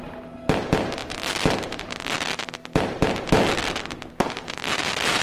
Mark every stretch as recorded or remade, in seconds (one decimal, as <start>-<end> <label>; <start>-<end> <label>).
0.0-5.2 recorded

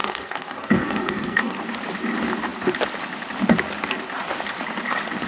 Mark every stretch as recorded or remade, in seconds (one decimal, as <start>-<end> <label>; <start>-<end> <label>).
0.0-1.6 remade; 1.6-5.3 recorded

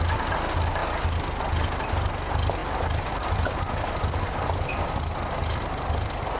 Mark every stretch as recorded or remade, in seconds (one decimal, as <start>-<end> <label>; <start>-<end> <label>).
0.0-0.8 recorded; 0.8-1.4 remade; 1.4-6.4 recorded

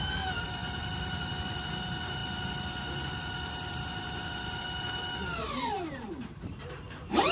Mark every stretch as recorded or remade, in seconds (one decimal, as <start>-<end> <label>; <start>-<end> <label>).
0.0-7.3 remade

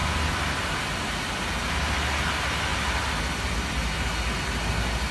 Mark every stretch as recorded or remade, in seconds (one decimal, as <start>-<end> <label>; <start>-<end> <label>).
0.0-1.7 remade; 1.7-2.7 recorded; 2.7-3.2 remade; 3.2-5.1 recorded

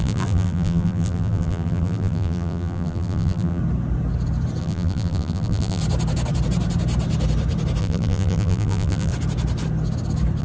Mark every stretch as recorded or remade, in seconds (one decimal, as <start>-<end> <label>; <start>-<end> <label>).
0.0-3.6 remade; 3.6-4.6 recorded; 4.6-5.8 remade; 5.8-7.8 recorded; 7.8-9.1 remade; 9.1-10.4 recorded

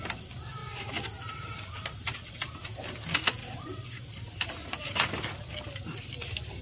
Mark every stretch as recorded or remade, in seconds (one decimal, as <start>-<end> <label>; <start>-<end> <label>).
0.0-0.6 recorded; 0.6-2.6 remade; 2.6-3.4 recorded; 3.4-5.3 remade; 5.3-6.6 recorded

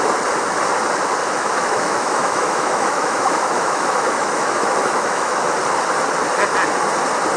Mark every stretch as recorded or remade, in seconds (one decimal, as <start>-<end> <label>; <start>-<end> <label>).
0.0-1.2 recorded; 1.2-5.6 remade; 5.6-7.4 recorded